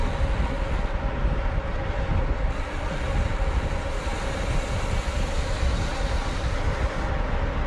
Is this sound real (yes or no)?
yes